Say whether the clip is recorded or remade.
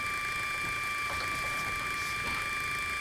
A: remade